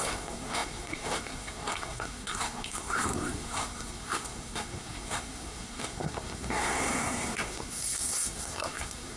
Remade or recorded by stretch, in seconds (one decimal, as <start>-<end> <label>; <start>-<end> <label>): 0.0-9.2 remade